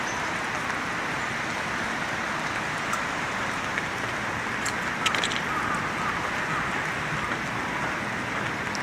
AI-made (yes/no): no